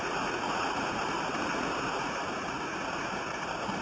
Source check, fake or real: fake